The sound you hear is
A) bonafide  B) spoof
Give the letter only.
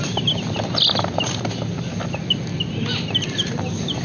A